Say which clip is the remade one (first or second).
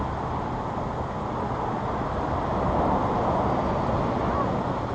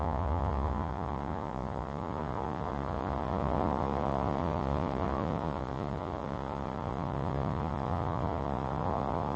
second